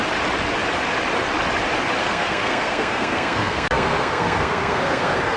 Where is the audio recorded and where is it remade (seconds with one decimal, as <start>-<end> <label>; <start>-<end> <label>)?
0.0-2.0 recorded; 2.0-5.4 remade